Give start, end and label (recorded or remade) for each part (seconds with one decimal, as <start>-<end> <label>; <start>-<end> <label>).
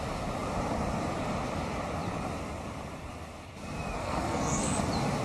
0.0-4.0 recorded; 4.0-4.8 remade; 4.8-5.2 recorded